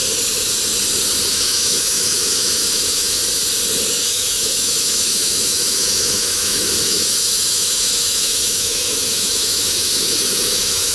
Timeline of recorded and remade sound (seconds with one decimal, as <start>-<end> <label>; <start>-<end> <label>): 0.0-1.3 recorded; 1.3-3.2 remade; 3.2-4.0 recorded; 4.0-10.9 remade